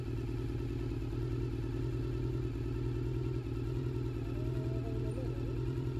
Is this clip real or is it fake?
real